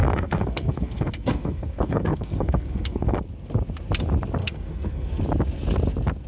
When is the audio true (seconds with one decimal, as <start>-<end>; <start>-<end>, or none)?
3.2-4.4; 5.2-6.3